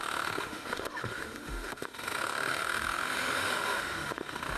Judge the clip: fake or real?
fake